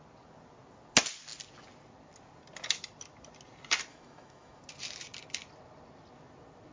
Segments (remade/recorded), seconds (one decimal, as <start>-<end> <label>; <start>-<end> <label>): 0.0-3.9 recorded; 3.9-4.6 remade; 4.6-6.7 recorded